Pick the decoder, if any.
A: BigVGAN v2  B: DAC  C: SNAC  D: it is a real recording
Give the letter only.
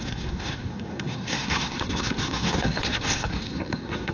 C